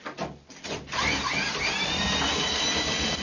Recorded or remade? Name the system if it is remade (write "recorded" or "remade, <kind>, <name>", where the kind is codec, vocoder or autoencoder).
recorded